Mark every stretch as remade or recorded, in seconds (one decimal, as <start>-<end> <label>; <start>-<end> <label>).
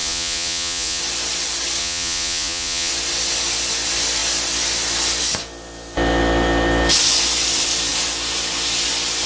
0.0-1.0 remade; 1.0-1.8 recorded; 1.8-2.9 remade; 2.9-9.3 recorded